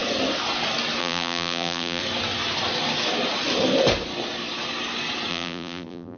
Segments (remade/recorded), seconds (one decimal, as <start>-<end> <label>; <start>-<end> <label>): 0.0-1.0 recorded; 1.0-2.0 remade; 2.0-5.3 recorded; 5.3-6.2 remade